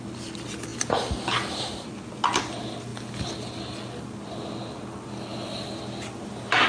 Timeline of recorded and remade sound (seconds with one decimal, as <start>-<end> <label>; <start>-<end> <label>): 0.0-6.7 recorded